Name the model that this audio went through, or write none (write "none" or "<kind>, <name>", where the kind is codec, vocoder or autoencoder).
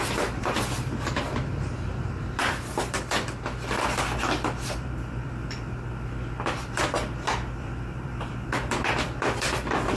vocoder, BigVGAN v2